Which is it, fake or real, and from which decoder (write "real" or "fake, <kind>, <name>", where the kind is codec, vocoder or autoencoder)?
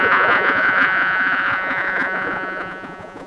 fake, vocoder, Vocos